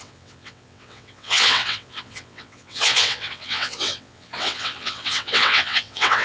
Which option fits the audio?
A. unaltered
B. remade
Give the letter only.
B